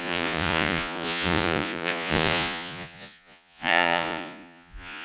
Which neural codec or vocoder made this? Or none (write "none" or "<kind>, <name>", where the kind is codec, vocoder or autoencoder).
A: vocoder, Vocos